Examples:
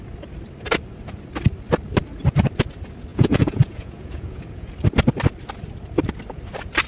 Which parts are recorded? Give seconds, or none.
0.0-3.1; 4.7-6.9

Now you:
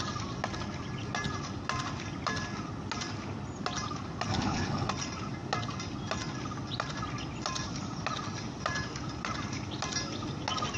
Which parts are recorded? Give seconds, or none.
0.0-4.3; 4.9-10.8

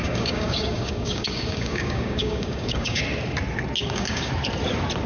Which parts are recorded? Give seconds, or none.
3.0-3.8; 4.3-5.1